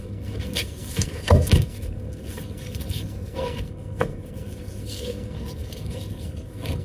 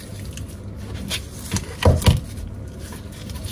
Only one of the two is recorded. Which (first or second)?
second